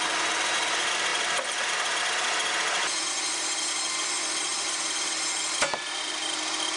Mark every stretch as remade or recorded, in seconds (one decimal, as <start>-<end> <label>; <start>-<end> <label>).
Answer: 0.0-6.8 recorded